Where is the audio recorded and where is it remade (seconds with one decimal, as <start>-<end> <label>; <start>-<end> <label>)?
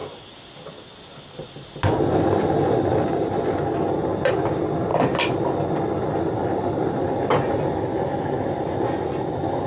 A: 0.0-9.7 recorded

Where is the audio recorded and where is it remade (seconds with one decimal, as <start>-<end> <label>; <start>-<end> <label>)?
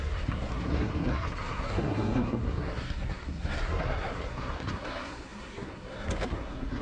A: 0.0-6.8 remade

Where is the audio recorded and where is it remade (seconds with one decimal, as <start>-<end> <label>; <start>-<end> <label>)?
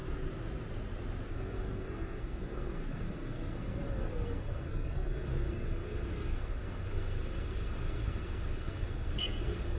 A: 0.0-1.3 recorded; 1.3-9.8 remade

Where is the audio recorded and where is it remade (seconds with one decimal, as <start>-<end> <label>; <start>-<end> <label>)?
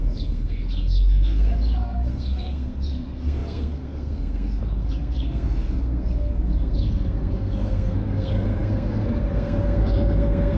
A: 0.0-10.6 remade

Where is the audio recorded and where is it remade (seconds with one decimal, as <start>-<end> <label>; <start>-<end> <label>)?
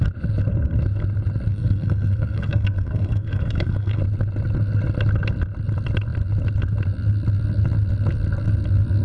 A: 0.0-1.5 recorded; 1.5-4.0 remade; 4.0-9.0 recorded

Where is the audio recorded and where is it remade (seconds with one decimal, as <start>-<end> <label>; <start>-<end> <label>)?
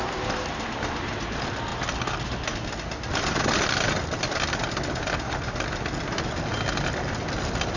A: 0.0-7.8 recorded